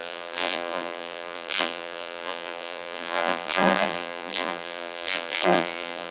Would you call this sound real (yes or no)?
no